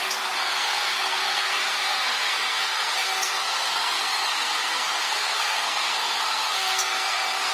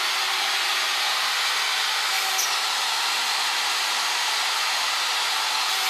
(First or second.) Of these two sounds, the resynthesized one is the first